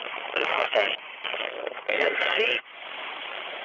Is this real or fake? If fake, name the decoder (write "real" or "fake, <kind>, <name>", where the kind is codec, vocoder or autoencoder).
fake, vocoder, Vocos